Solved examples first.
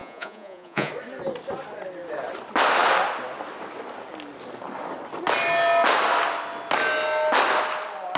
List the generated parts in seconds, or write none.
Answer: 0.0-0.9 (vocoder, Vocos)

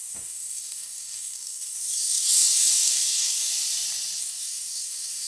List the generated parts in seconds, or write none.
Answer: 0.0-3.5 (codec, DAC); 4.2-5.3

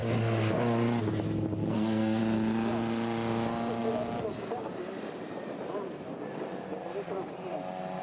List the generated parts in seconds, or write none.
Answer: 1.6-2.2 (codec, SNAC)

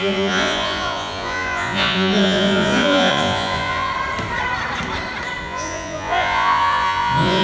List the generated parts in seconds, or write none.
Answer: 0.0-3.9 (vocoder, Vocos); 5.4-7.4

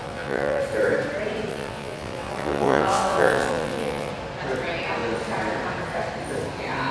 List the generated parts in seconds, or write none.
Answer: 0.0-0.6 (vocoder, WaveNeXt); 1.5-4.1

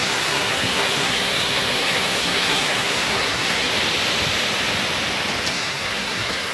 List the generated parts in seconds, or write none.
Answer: 0.0-3.7 (codec, SNAC); 5.5-6.5